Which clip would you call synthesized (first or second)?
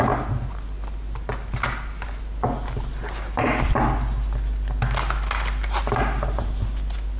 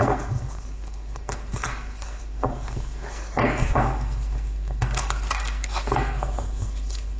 second